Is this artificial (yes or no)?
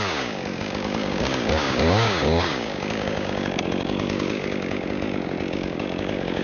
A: yes